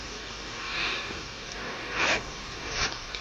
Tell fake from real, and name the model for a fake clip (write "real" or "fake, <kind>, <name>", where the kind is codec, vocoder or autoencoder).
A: fake, codec, DAC